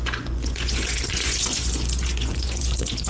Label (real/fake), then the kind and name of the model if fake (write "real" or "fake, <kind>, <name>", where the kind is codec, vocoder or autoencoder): fake, vocoder, Vocos